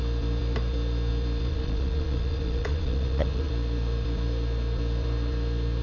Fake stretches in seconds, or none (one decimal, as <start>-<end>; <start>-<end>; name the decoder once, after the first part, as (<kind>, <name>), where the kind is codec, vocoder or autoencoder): 1.5-3.5 (vocoder, Vocos)